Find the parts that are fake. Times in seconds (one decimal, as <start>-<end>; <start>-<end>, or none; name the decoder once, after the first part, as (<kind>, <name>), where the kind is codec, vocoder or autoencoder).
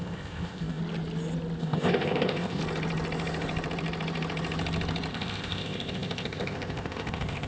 0.0-0.8 (codec, ZipCodec); 1.6-2.6; 5.1-7.5